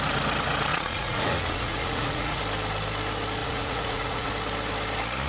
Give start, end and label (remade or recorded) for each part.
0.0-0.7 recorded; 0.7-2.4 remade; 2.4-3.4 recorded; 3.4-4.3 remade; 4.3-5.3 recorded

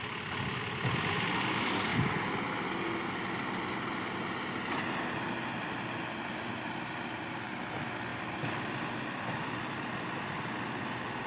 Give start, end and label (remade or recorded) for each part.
0.0-0.6 remade; 0.6-8.1 recorded; 8.1-10.5 remade; 10.5-11.3 recorded

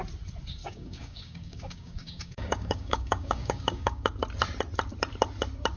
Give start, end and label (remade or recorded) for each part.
0.0-0.6 recorded; 0.6-4.1 remade; 4.1-5.8 recorded

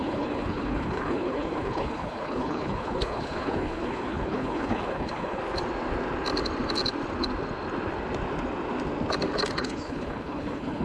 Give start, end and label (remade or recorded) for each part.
0.0-5.4 remade; 5.4-9.6 recorded; 9.6-10.8 remade

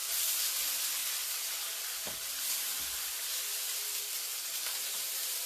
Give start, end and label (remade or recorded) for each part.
0.0-5.5 recorded

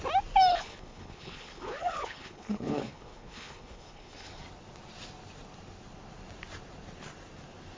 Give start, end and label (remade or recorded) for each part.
0.0-0.5 recorded; 0.5-4.4 remade; 4.4-7.8 recorded

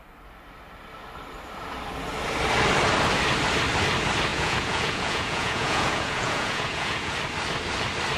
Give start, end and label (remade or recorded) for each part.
0.0-4.3 recorded; 4.3-7.1 remade; 7.1-8.2 recorded

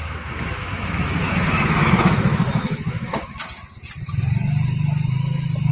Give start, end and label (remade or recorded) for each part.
0.0-3.4 remade; 3.4-5.7 recorded